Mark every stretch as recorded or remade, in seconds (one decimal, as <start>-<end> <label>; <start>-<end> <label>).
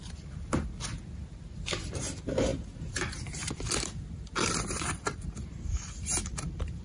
0.0-1.8 recorded; 1.8-6.8 remade